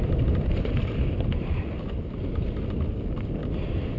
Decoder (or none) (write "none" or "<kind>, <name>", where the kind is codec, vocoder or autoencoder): none